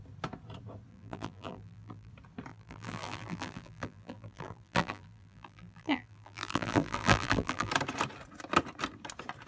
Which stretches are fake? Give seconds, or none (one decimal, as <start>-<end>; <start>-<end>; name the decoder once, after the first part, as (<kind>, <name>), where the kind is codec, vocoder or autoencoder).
0.9-2.1 (vocoder, BigVGAN v2); 2.5-7.7